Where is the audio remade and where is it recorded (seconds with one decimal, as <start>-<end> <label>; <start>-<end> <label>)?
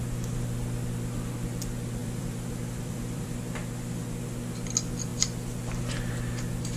0.0-2.0 recorded; 2.0-3.4 remade; 3.4-6.8 recorded